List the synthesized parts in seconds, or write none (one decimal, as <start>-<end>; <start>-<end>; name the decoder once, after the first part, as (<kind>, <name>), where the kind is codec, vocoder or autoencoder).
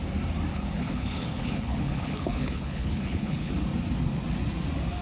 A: 0.5-3.5 (codec, HILCodec)